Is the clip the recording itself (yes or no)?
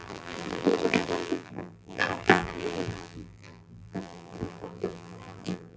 no